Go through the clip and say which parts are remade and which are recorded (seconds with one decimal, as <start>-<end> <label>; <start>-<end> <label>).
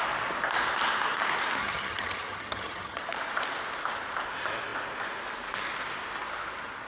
0.0-1.6 recorded; 1.6-3.0 remade; 3.0-6.9 recorded